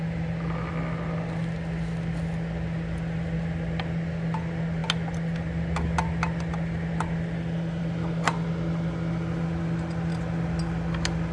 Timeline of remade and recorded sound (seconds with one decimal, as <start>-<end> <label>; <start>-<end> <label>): 0.0-11.3 recorded